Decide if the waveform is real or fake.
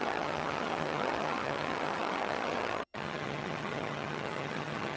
fake